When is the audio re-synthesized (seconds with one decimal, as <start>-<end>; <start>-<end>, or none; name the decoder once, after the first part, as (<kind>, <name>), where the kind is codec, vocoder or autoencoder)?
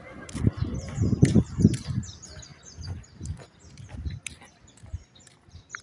none